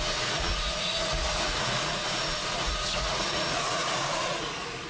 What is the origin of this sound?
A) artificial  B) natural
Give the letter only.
A